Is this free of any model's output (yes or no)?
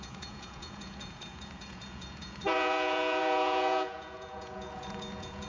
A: no